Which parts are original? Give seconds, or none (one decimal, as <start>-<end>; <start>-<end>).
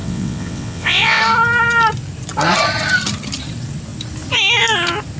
1.2-5.2